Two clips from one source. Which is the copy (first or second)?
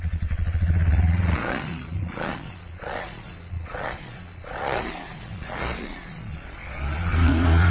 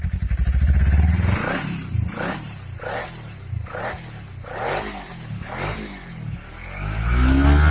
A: first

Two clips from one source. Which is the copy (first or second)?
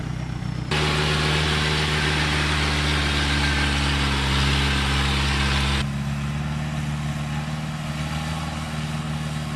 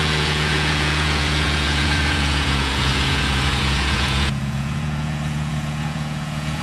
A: second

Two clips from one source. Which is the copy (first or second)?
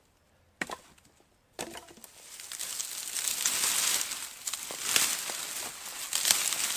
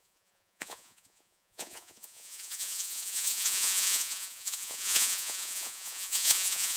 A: second